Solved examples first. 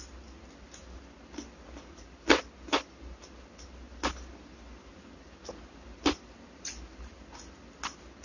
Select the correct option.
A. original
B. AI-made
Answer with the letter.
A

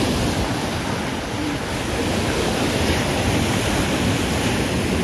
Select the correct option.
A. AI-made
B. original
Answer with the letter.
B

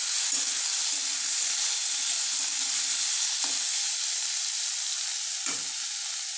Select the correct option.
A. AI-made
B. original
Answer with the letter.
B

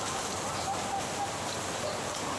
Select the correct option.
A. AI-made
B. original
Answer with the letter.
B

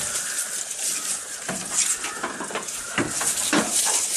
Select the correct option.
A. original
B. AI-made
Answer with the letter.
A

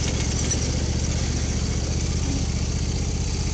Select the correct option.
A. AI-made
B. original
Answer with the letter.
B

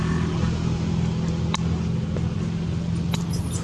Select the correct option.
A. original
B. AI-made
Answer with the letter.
A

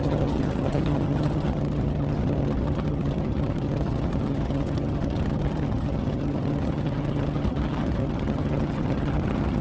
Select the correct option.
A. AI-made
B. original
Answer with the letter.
A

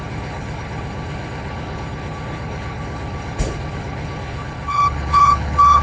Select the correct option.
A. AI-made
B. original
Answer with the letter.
A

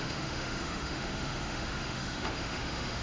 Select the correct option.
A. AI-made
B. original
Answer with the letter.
A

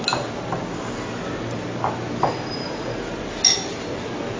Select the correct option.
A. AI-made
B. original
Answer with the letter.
B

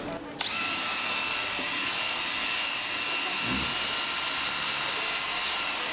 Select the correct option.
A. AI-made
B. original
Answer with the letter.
B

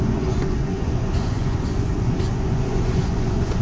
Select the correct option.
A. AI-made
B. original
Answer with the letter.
A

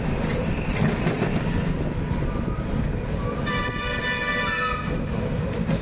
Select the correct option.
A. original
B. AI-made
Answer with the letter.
A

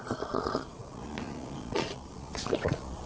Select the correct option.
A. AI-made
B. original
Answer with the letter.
A